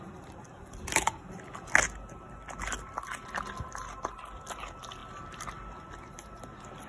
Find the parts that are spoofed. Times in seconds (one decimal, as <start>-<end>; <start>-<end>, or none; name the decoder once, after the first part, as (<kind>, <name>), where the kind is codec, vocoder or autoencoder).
none